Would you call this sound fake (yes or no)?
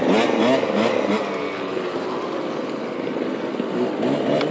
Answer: no